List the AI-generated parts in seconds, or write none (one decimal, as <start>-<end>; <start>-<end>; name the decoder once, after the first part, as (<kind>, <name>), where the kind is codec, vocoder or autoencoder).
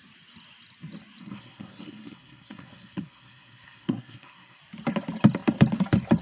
1.2-4.6 (codec, SNAC)